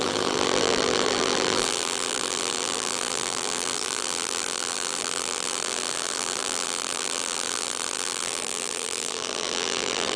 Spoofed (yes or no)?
yes